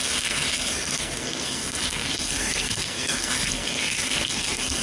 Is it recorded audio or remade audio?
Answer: remade